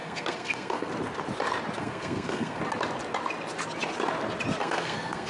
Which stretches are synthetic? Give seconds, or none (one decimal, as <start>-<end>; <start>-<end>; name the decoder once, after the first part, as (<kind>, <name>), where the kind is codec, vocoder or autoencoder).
0.0-0.9 (codec, SNAC); 1.8-2.6; 4.6-5.3